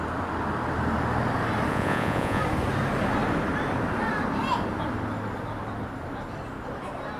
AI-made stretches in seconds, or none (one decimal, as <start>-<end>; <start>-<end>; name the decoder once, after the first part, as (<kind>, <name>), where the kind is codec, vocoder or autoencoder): 1.7-2.4 (vocoder, Vocos)